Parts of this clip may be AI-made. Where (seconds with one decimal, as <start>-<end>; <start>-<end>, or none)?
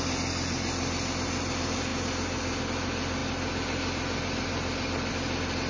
none